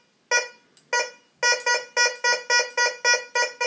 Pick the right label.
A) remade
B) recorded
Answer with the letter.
B